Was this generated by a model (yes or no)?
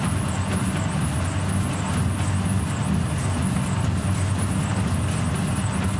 no